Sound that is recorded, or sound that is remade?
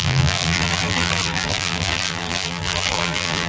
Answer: remade